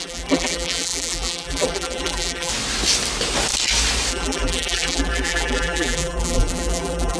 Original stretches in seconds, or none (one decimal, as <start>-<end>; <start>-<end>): 2.5-4.1